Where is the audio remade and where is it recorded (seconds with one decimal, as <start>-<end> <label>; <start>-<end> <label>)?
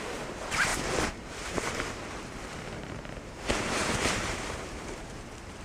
0.0-5.6 remade